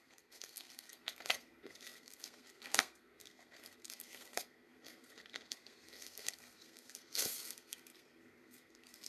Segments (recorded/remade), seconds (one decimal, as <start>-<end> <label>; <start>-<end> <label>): 0.0-9.1 remade